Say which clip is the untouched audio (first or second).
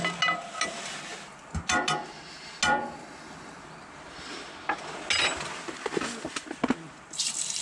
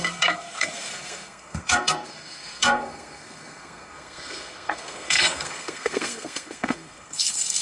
first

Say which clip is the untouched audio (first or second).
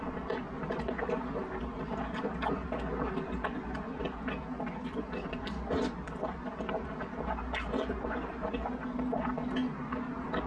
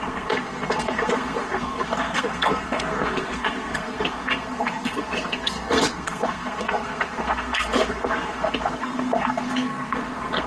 first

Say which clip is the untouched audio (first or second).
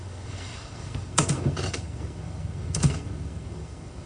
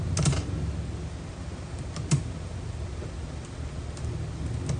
second